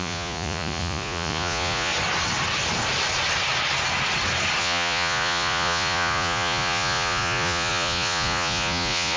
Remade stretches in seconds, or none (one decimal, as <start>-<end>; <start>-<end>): 0.0-1.9; 4.6-9.2